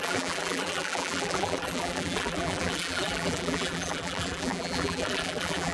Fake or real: fake